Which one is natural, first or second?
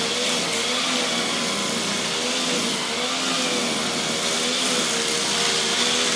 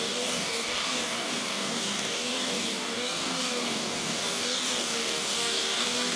first